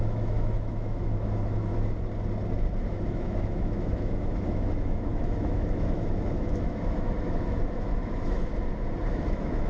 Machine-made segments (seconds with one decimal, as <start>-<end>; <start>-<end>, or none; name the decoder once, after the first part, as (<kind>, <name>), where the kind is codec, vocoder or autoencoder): 0.0-1.7 (autoencoder, DAC-VAE); 2.9-8.5; 9.1-9.7